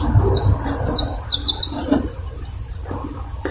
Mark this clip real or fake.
real